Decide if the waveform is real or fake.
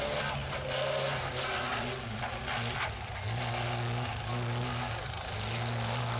real